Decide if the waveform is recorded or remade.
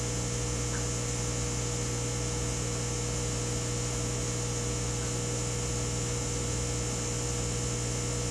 recorded